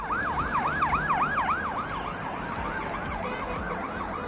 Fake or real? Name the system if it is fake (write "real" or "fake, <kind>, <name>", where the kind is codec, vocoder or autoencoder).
real